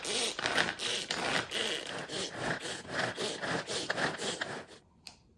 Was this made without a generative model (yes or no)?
yes